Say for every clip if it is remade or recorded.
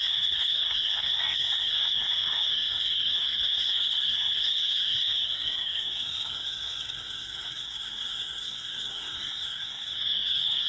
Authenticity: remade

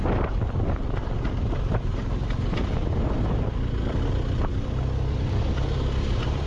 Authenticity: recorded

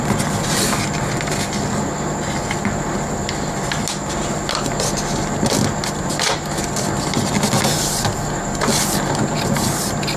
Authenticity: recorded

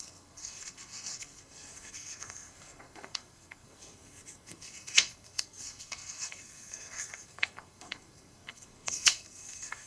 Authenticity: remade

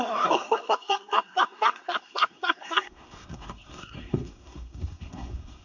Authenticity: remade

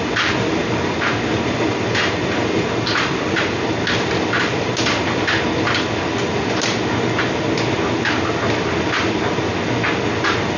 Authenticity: recorded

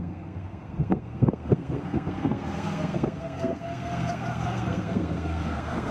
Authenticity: remade